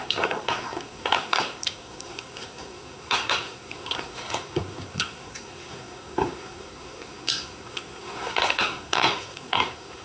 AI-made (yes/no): yes